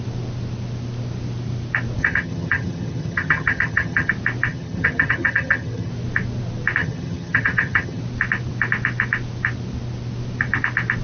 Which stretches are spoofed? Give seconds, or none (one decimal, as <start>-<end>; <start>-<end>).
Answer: 2.0-4.1; 4.5-5.9; 6.8-8.0